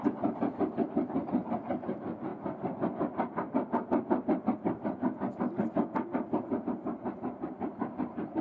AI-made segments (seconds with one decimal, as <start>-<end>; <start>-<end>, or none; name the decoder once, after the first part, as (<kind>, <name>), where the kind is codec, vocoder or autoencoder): none